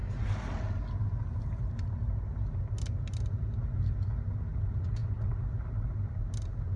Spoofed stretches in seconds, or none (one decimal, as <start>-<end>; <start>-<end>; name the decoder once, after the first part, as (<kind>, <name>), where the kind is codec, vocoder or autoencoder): none